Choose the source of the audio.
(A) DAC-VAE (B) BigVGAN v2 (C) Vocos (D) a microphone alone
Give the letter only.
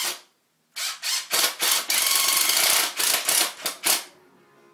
D